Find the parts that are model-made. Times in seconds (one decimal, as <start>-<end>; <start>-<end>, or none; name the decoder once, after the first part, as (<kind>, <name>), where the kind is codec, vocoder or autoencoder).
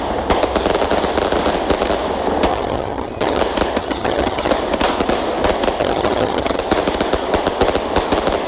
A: 2.5-3.4 (vocoder, HiFi-GAN); 3.8-4.5; 5.8-6.6